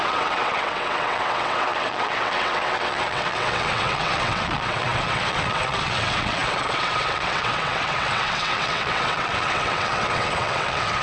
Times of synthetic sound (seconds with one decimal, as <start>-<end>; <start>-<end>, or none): 0.0-11.0